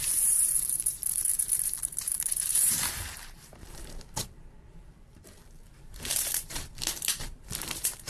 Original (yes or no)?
no